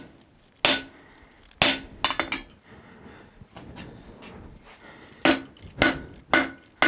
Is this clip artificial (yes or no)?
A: no